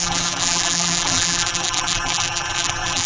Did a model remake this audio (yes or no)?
yes